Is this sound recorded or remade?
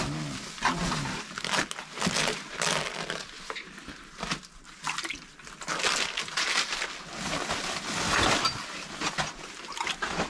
recorded